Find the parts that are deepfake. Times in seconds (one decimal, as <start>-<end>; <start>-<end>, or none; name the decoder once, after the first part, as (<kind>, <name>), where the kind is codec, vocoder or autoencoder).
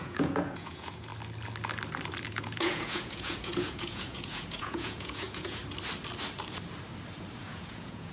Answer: 0.0-1.1 (vocoder, Vocos); 2.3-5.6; 7.4-8.1